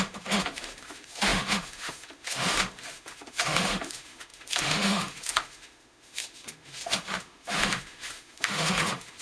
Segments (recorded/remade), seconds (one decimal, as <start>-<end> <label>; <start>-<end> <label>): 0.0-9.2 remade